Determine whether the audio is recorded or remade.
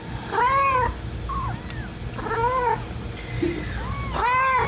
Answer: recorded